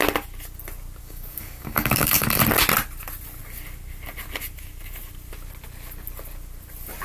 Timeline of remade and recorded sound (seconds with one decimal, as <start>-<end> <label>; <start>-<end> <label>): 0.0-1.0 recorded; 1.0-2.4 remade; 2.4-7.0 recorded